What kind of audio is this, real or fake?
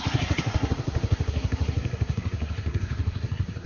fake